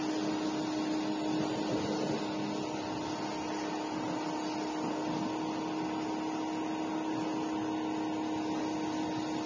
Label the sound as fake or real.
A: real